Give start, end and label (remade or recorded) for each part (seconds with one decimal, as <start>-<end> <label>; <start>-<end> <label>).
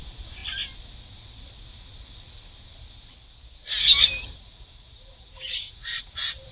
0.0-0.4 remade; 0.4-4.3 recorded; 4.3-6.5 remade